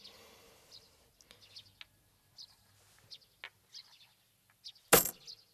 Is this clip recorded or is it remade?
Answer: recorded